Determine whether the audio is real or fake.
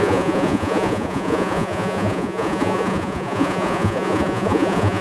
fake